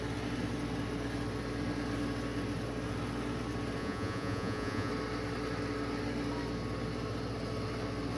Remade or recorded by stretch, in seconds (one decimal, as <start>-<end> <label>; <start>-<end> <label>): 0.0-3.8 recorded; 3.8-4.9 remade; 4.9-8.2 recorded